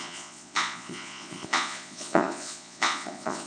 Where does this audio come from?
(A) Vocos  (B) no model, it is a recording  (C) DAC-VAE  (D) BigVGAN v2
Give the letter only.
A